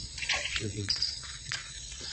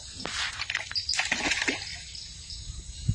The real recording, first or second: second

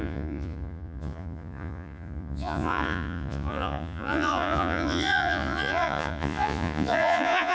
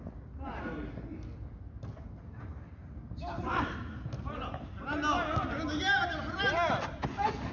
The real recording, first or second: second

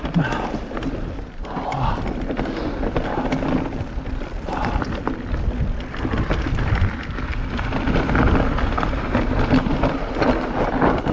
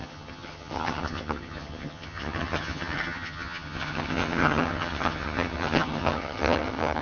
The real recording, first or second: first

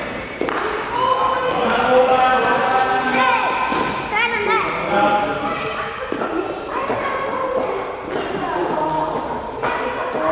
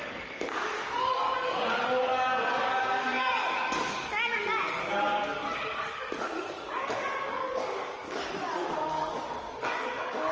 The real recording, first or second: first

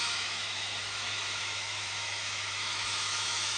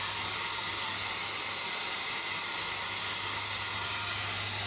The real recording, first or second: second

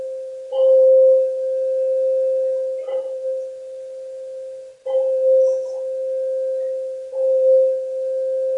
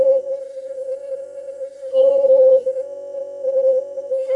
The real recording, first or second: first